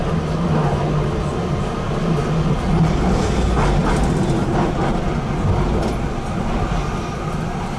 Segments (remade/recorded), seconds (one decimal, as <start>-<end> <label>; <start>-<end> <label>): 0.0-7.8 recorded

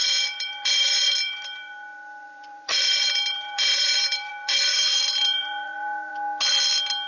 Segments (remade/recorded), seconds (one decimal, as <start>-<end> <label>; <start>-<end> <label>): 0.0-6.1 remade; 6.1-7.1 recorded

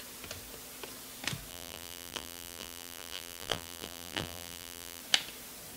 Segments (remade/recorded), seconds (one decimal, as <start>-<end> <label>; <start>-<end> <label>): 0.0-1.5 recorded; 1.5-5.0 remade; 5.0-5.8 recorded